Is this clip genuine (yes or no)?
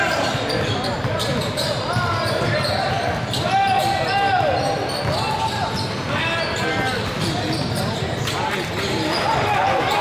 yes